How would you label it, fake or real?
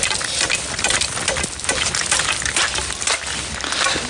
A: real